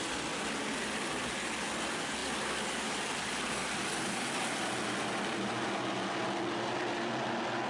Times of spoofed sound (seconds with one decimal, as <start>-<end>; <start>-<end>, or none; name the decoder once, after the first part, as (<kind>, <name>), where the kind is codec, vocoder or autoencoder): none